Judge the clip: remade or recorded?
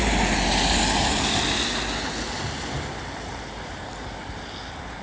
recorded